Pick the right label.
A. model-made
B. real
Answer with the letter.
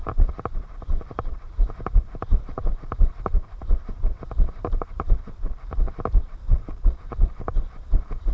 A